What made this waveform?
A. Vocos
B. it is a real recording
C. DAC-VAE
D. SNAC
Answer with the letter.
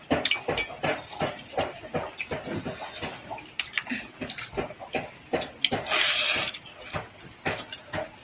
B